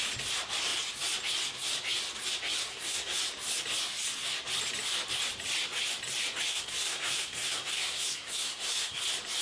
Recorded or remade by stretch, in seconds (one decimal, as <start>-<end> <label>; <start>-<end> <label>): 0.0-2.7 recorded; 2.7-3.2 remade; 3.2-6.5 recorded; 6.5-9.0 remade; 9.0-9.4 recorded